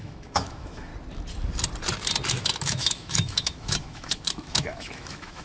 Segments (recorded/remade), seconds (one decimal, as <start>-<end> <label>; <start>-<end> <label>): 0.0-0.9 remade; 0.9-2.3 recorded; 2.3-5.4 remade